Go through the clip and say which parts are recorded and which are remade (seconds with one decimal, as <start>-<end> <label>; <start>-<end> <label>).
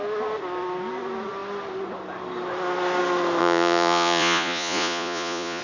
0.0-3.4 recorded; 3.4-5.6 remade